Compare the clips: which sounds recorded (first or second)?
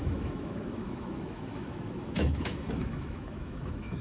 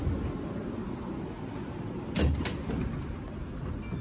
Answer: second